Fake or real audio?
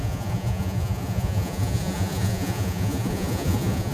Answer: fake